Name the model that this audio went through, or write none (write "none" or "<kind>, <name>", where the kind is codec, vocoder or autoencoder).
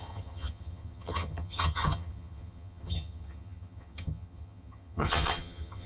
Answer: vocoder, HiFi-GAN